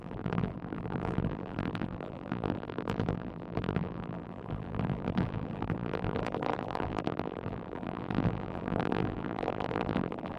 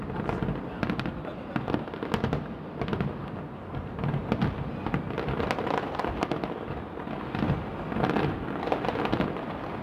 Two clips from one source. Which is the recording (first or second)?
second